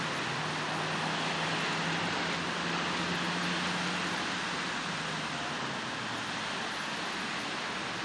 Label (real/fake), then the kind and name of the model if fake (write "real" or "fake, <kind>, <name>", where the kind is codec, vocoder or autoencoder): real